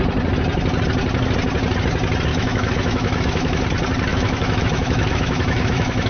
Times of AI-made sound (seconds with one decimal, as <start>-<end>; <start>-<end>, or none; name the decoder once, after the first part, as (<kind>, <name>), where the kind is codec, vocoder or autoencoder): 2.3-3.6 (autoencoder, DAC-VAE); 4.1-6.1